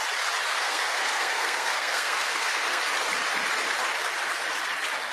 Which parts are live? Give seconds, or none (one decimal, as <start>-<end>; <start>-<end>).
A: 0.0-0.5; 2.8-5.1

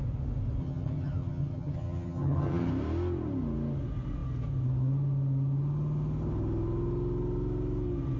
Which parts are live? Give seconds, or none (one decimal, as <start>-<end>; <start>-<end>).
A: 0.0-0.6; 2.7-8.2